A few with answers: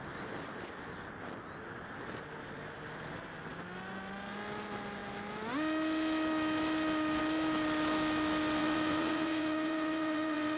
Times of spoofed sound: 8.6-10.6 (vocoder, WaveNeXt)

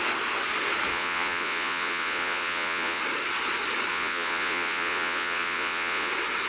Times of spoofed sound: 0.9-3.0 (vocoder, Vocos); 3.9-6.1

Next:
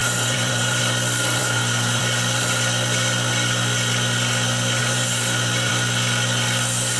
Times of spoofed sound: 0.0-0.8 (vocoder, BigVGAN v2); 1.4-2.0; 4.8-5.7

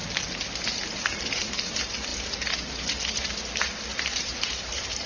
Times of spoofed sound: 3.9-5.1 (vocoder, BigVGAN v2)

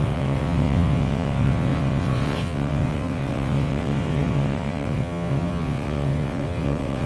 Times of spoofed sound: 0.0-7.1 (vocoder, WaveNeXt)

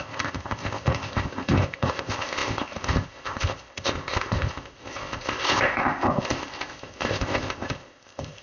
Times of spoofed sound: 0.0-8.4 (codec, ZipCodec)